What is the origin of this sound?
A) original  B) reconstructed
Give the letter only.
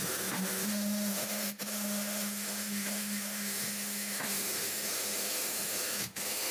B